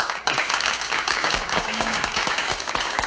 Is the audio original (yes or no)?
no